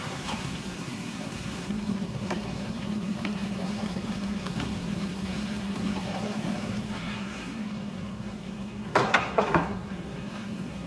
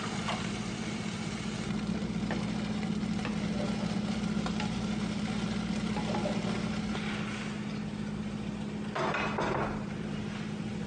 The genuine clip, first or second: second